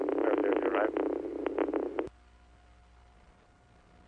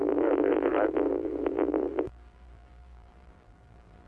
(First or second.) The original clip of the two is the first